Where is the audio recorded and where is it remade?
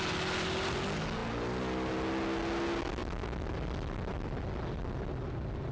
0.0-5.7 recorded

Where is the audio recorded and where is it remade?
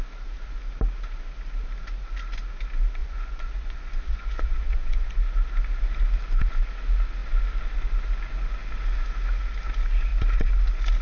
0.0-3.0 recorded; 3.0-5.2 remade; 5.2-11.0 recorded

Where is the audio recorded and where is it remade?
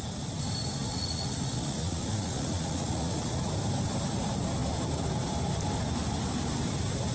0.0-0.8 recorded; 0.8-3.5 remade; 3.5-7.1 recorded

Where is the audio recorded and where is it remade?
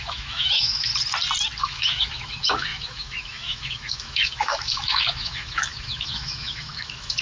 0.0-0.9 remade; 0.9-1.6 recorded; 1.6-7.2 remade